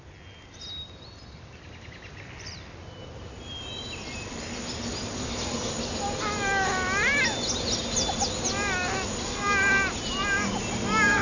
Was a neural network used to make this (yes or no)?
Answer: no